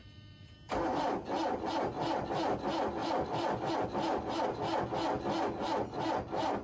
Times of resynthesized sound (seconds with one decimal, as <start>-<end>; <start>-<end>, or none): 0.0-1.7; 3.0-3.7